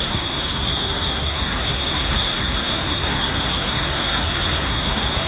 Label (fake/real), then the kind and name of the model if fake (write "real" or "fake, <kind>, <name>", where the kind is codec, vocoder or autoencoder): fake, codec, SNAC